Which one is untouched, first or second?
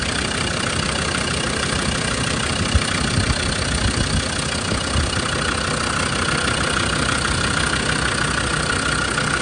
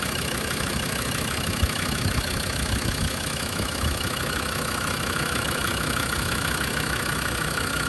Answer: first